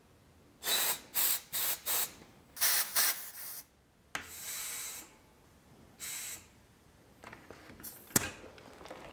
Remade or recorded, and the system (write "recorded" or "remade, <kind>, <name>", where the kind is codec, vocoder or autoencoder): recorded